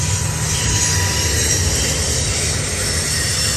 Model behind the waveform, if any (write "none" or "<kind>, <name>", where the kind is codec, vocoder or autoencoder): none